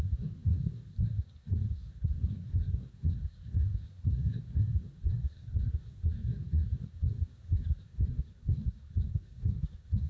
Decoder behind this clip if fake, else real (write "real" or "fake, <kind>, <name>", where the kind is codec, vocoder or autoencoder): fake, codec, SNAC